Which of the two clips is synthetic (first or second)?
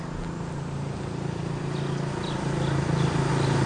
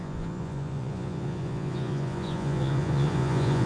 second